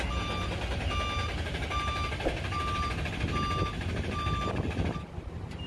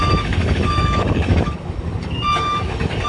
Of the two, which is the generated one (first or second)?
second